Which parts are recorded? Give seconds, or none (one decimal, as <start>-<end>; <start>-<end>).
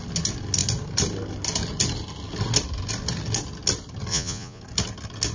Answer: 0.0-4.1; 4.6-5.3